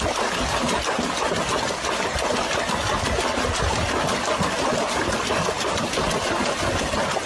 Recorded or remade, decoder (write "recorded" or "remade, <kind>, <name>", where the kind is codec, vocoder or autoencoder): recorded